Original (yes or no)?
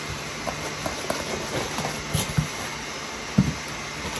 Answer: yes